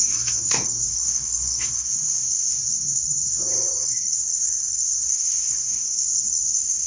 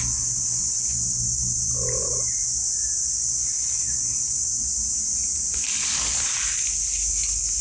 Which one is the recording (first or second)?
second